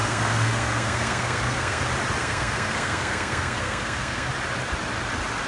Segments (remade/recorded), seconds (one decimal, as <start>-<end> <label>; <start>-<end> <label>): 0.0-1.8 remade; 1.8-2.2 recorded; 2.2-4.3 remade; 4.3-5.5 recorded